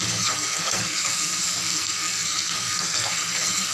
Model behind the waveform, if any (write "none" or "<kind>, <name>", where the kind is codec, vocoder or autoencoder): codec, SNAC